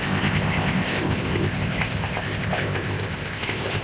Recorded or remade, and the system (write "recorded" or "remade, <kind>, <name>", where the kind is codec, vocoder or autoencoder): remade, codec, ZipCodec